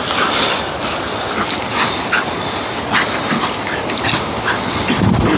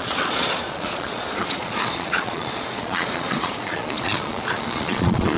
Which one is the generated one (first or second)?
second